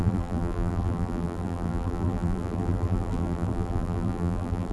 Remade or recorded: remade